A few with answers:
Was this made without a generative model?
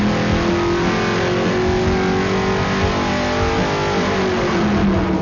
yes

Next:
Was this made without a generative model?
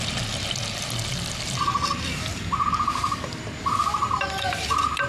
yes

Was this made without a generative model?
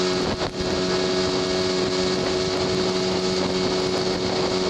yes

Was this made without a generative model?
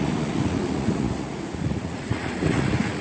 no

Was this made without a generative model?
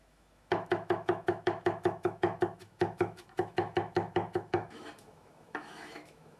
no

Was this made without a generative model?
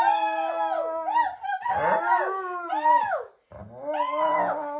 yes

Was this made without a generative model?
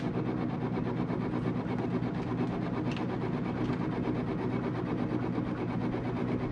yes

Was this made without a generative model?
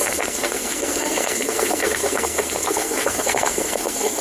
no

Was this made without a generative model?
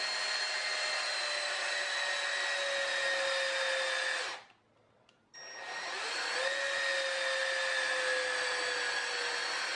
yes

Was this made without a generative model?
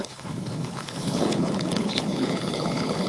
no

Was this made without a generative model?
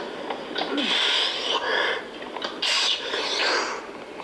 no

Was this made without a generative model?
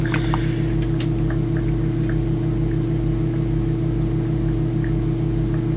yes